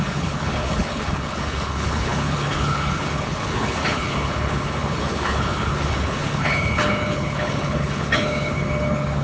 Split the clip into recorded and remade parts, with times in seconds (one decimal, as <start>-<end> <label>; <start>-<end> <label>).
0.0-9.2 remade